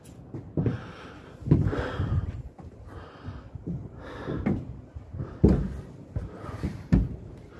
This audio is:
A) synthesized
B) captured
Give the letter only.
B